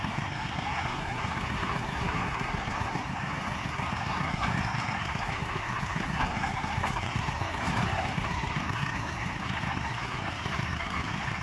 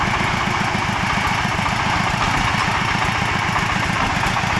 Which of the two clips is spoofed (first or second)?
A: first